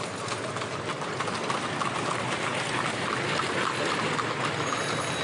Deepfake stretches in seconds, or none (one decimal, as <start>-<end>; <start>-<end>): none